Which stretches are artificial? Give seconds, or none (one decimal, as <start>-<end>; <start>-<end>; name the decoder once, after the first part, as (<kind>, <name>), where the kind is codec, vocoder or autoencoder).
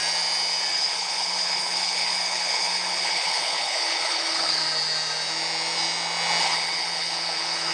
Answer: 0.7-4.6 (codec, HILCodec); 6.4-7.7